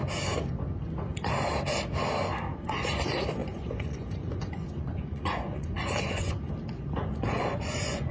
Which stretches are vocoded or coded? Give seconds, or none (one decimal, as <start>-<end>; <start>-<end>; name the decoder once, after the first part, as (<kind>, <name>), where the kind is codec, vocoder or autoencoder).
3.4-6.5 (vocoder, Vocos); 7.1-8.1